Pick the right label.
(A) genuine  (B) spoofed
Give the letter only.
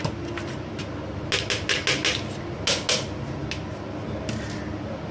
A